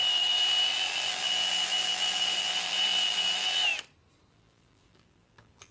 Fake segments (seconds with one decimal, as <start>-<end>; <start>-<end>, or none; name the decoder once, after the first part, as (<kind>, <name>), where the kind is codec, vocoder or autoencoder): 0.0-3.7 (vocoder, BigVGAN v2); 4.3-5.7